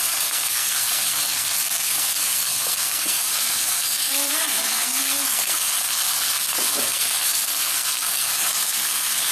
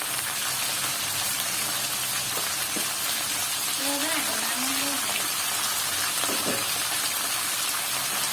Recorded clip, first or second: second